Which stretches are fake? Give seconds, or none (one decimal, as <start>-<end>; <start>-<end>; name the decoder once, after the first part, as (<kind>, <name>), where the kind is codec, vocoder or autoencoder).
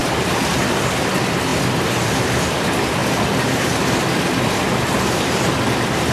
0.0-0.5 (vocoder, BigVGAN v2); 1.5-2.5; 3.0-4.2